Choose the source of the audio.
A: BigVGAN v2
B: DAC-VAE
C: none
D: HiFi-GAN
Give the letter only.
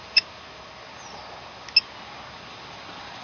C